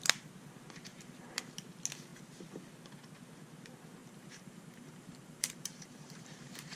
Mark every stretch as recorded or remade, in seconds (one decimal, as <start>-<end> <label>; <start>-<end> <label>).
0.0-0.9 recorded; 0.9-1.4 remade; 1.4-4.0 recorded; 4.0-6.8 remade